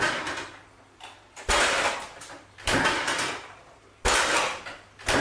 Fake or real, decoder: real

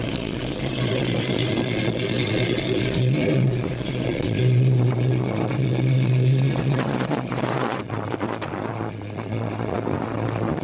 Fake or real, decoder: fake, vocoder, Vocos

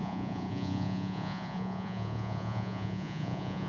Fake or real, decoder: fake, vocoder, Vocos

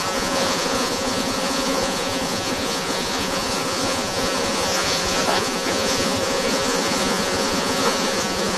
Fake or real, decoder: fake, vocoder, Vocos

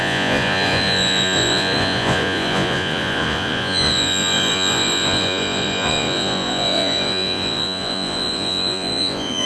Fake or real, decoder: fake, vocoder, Vocos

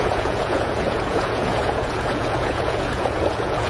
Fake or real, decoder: fake, vocoder, Vocos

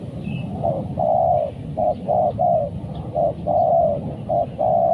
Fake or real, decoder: real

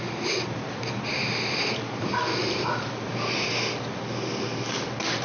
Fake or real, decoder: real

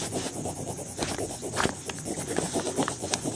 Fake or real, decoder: fake, vocoder, Vocos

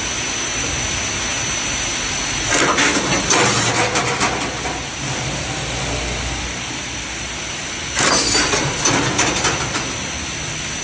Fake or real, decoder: real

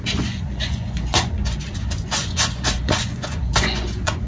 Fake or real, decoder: fake, vocoder, Vocos